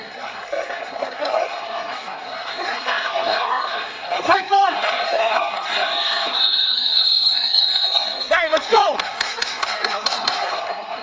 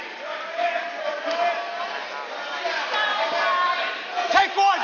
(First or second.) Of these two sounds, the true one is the second